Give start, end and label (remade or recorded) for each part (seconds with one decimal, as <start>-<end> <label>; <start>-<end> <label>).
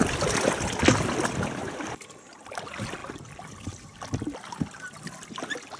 0.0-5.8 recorded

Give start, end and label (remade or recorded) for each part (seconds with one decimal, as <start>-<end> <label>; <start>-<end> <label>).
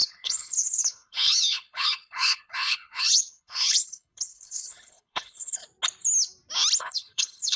0.0-5.6 remade; 5.6-6.8 recorded; 6.8-7.6 remade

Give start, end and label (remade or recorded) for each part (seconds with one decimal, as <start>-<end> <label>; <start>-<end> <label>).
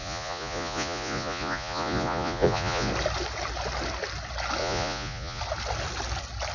0.0-2.9 remade; 2.9-4.6 recorded; 4.6-5.4 remade; 5.4-6.5 recorded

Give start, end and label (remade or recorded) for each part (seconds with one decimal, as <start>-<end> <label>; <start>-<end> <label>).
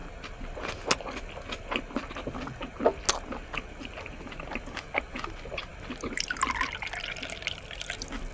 0.0-8.3 recorded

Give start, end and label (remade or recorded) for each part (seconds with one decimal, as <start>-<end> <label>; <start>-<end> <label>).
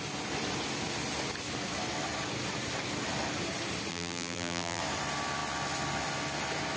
0.0-3.9 recorded; 3.9-4.8 remade; 4.8-6.8 recorded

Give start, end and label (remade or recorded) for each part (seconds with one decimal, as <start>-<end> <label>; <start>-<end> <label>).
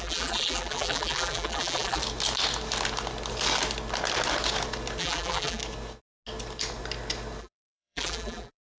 0.0-2.0 remade; 2.0-5.0 recorded; 5.0-5.6 remade; 5.6-7.4 recorded; 7.4-8.8 remade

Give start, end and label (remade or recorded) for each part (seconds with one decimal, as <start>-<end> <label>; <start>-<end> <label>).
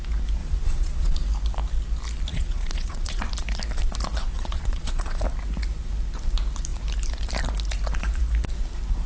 0.0-0.4 recorded; 0.4-1.3 remade; 1.3-2.3 recorded; 2.3-3.2 remade; 3.2-4.3 recorded; 4.3-5.2 remade; 5.2-9.1 recorded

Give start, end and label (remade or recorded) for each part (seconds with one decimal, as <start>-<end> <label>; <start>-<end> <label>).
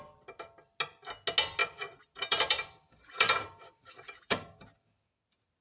0.0-1.6 recorded; 1.6-4.7 remade; 4.7-5.6 recorded